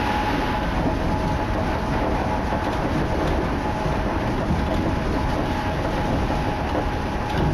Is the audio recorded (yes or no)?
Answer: yes